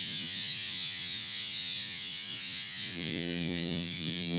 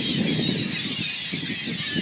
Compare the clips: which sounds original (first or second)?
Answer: second